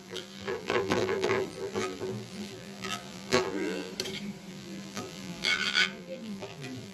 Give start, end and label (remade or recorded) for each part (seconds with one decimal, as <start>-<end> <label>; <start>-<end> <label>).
0.0-3.9 remade; 3.9-4.5 recorded; 4.5-6.9 remade